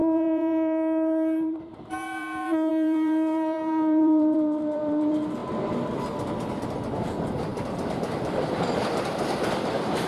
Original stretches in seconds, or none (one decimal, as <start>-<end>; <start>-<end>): 5.4-6.5